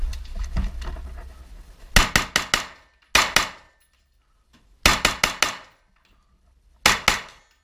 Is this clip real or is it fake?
real